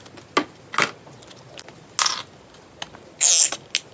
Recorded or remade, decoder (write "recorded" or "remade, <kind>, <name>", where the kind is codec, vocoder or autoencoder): recorded